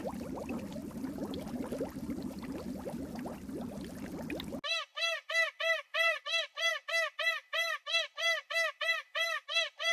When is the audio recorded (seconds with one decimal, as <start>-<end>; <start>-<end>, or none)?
0.0-0.8; 4.1-4.9; 6.7-9.9